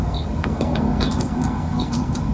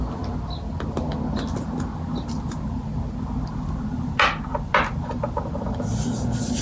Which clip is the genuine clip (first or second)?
second